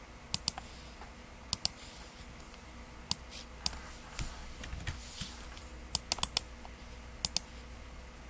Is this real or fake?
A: real